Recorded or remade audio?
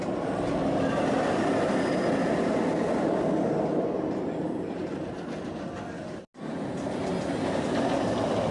recorded